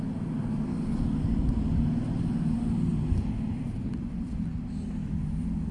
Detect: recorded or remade recorded